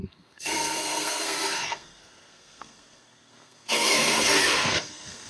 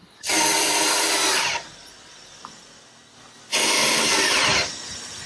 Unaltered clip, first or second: second